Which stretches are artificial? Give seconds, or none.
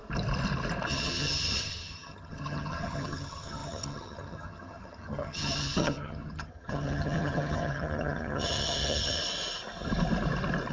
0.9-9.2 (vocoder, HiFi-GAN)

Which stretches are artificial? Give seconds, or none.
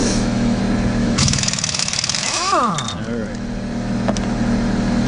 0.0-0.6 (autoencoder, DAC-VAE); 1.0-2.7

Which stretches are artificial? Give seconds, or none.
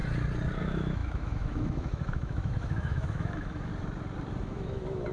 0.6-3.7 (autoencoder, DAC-VAE); 4.4-5.1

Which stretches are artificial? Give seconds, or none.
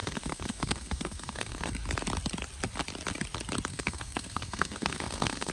0.0-1.7 (codec, SNAC); 3.7-5.5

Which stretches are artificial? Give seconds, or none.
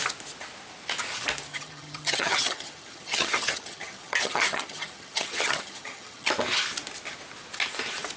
1.5-6.3 (vocoder, HiFi-GAN)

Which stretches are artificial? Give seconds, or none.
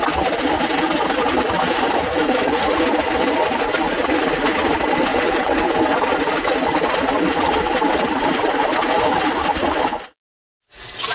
5.1-5.6 (vocoder, WaveNeXt)